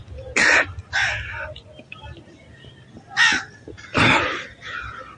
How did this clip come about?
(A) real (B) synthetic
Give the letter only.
A